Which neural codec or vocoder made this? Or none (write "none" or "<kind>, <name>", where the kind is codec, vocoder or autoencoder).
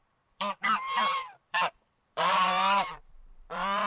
vocoder, BigVGAN v2